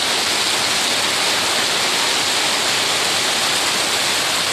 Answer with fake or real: real